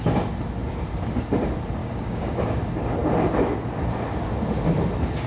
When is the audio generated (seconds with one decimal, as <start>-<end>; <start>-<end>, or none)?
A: 1.8-2.6